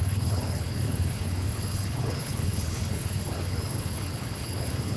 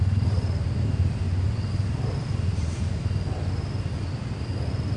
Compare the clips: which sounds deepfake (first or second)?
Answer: first